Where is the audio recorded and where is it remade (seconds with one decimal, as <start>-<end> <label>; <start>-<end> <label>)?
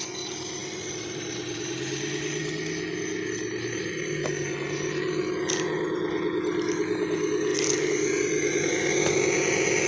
0.0-0.6 recorded; 0.6-1.7 remade; 1.7-7.5 recorded; 7.5-8.7 remade; 8.7-9.9 recorded